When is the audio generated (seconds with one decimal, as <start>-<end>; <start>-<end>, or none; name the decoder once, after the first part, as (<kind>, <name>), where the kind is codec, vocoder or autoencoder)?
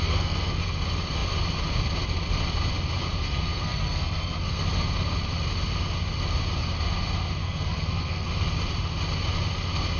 0.0-0.7 (codec, SNAC); 3.2-4.6; 7.4-8.3